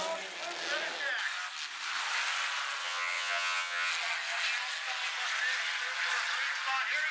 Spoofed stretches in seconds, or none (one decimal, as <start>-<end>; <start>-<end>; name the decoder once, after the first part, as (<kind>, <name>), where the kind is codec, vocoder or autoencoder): 2.8-3.9 (vocoder, HiFi-GAN)